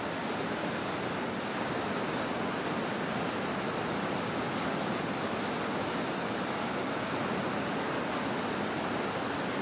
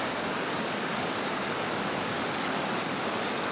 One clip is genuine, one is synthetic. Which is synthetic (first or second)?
second